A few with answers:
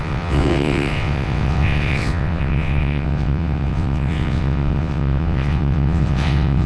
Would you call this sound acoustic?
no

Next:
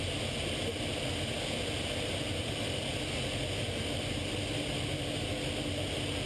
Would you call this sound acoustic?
yes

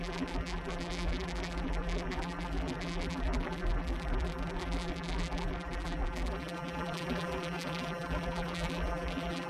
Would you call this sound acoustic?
no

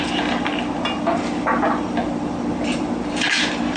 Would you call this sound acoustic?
yes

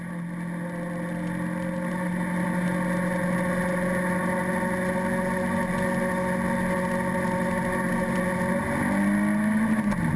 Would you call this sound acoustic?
yes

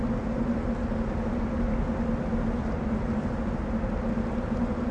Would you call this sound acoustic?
yes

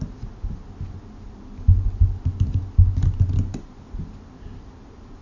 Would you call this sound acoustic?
yes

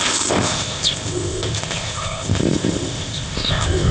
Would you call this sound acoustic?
no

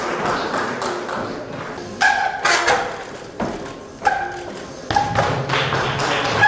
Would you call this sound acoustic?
yes